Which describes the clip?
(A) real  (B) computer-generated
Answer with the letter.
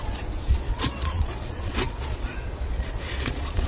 B